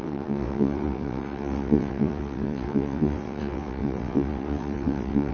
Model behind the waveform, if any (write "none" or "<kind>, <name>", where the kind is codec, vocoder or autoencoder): vocoder, WaveNeXt